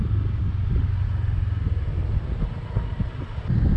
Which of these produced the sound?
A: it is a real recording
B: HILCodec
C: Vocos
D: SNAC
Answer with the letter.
A